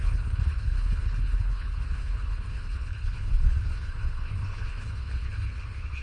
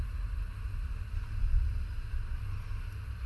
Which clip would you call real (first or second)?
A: second